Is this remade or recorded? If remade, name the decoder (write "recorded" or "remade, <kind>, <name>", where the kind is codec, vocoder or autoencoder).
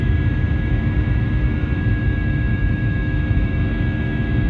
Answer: remade, autoencoder, DAC-VAE